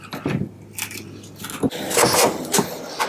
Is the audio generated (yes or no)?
no